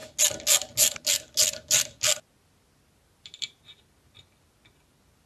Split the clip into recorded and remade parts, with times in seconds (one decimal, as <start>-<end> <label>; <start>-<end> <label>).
0.0-5.3 recorded